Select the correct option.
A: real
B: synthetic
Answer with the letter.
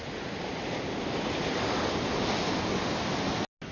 A